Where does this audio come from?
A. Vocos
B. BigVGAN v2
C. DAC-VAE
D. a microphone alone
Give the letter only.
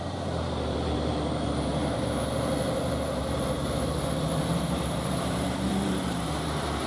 B